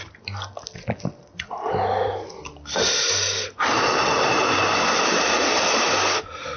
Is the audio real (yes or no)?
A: yes